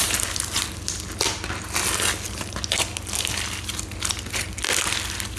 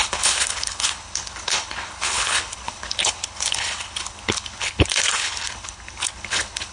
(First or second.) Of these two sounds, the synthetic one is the second